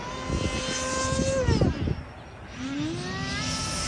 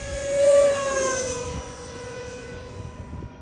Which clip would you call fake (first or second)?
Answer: second